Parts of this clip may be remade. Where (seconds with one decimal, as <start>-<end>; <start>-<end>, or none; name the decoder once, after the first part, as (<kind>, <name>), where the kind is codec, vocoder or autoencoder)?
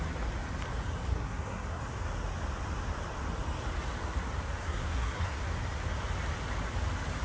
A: 1.1-1.8 (codec, SNAC); 4.6-5.4